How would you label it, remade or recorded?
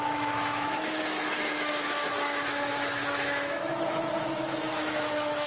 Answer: remade